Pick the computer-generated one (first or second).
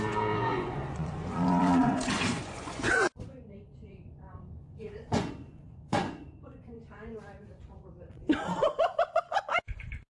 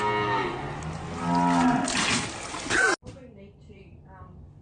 first